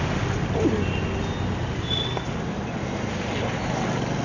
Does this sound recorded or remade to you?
recorded